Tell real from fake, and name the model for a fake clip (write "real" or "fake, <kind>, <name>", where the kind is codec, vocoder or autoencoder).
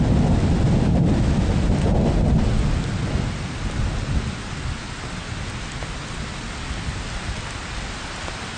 real